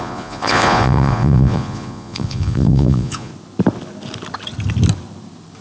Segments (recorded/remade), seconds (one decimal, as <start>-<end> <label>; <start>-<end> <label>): 0.0-3.3 remade; 3.3-5.6 recorded